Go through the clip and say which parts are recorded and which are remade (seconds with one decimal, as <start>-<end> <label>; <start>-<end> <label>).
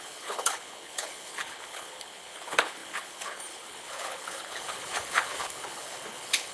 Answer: 0.0-6.5 remade